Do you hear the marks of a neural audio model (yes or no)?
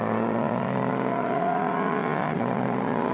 yes